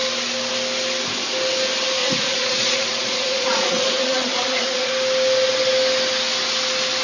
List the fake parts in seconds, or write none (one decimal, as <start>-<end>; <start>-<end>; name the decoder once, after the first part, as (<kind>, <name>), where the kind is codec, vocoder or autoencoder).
2.0-4.9 (vocoder, Vocos)